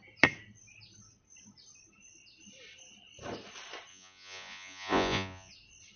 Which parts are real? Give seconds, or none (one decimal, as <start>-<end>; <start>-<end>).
0.0-3.9; 5.5-6.0